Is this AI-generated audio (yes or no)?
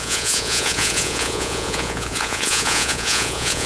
yes